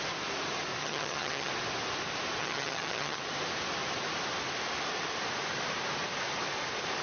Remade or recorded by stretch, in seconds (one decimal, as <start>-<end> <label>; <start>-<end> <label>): 0.0-0.8 recorded; 0.8-1.5 remade; 1.5-2.4 recorded; 2.4-3.2 remade; 3.2-7.0 recorded